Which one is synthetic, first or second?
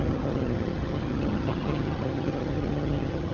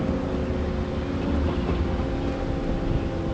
first